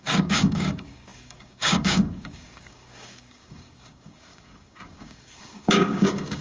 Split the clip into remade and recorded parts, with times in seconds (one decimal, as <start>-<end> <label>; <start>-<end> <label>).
0.0-6.4 remade